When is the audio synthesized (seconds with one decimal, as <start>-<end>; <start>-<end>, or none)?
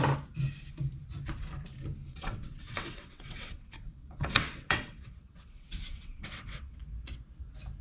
2.1-6.8